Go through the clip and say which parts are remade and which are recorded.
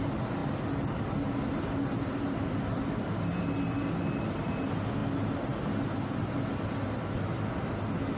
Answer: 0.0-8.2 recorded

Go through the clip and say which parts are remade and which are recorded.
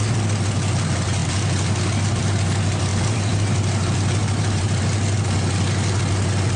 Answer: 0.0-2.9 recorded; 2.9-3.8 remade; 3.8-4.2 recorded; 4.2-4.8 remade; 4.8-6.6 recorded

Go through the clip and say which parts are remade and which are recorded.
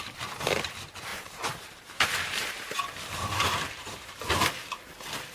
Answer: 0.0-1.1 recorded; 1.1-4.3 remade; 4.3-5.3 recorded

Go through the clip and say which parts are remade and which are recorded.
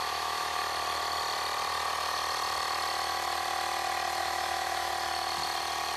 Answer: 0.0-0.6 remade; 0.6-4.2 recorded; 4.2-4.9 remade; 4.9-6.0 recorded